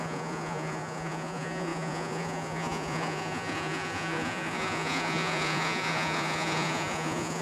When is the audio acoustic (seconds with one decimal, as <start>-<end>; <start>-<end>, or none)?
none